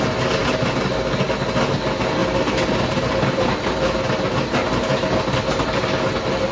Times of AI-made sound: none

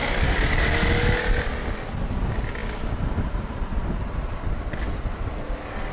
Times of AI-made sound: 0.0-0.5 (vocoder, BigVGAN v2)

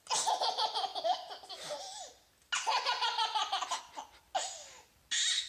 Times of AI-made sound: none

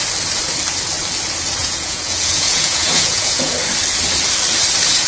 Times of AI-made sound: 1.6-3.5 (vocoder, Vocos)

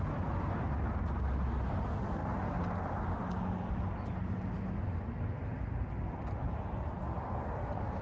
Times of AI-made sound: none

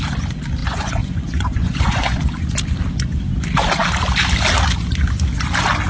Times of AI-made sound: 0.6-2.2 (vocoder, Vocos)